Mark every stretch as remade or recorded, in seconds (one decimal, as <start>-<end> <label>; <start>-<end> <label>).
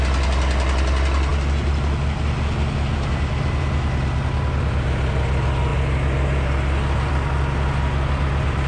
0.0-8.7 recorded